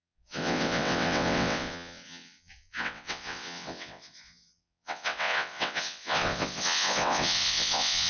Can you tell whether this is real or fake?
fake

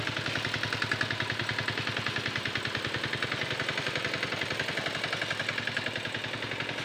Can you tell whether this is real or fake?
real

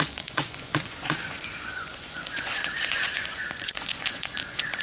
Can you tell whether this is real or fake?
fake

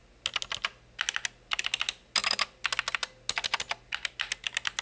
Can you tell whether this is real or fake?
real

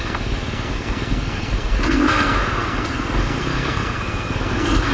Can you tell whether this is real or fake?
fake